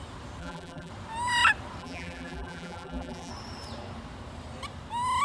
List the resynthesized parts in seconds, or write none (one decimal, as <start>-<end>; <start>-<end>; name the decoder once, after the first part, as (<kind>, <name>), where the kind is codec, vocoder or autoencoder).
0.4-0.9 (vocoder, BigVGAN v2); 1.8-3.3